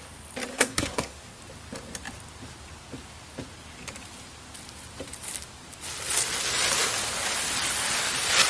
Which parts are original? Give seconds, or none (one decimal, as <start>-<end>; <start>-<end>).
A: 0.0-0.5; 1.4-8.5